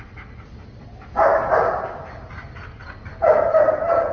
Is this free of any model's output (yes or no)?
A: yes